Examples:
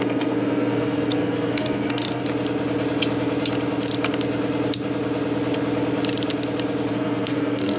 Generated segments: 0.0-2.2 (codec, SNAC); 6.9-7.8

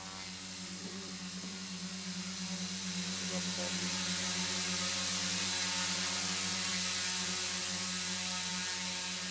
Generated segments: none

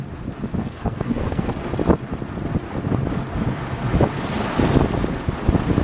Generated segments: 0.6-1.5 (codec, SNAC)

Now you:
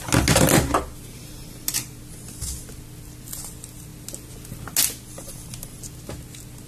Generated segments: none